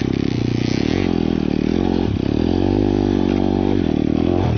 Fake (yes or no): no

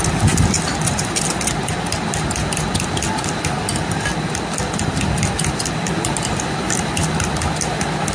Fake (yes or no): no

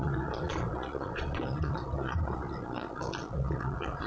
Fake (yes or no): yes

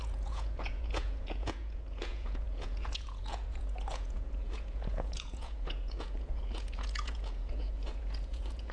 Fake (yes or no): yes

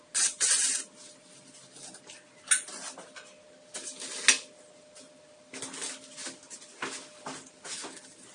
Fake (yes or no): no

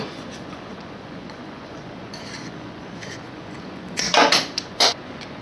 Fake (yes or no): yes